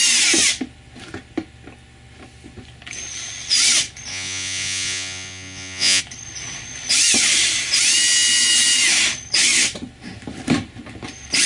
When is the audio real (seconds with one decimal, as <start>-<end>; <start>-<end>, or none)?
0.0-4.1; 6.0-11.5